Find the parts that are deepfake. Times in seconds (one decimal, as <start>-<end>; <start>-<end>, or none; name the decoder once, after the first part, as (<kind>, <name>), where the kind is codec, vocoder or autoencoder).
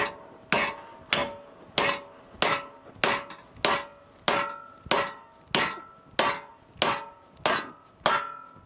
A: none